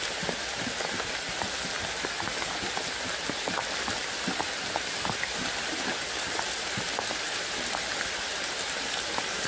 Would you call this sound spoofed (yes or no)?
no